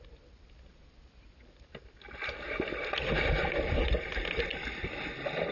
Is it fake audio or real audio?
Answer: real